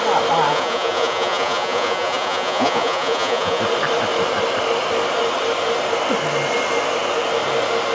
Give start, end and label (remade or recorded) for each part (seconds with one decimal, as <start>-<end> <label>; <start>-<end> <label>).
0.0-0.5 recorded; 0.5-3.6 remade; 3.6-7.9 recorded